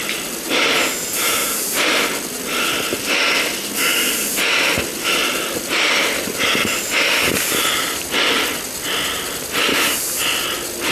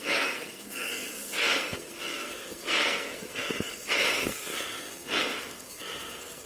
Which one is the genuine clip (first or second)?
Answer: first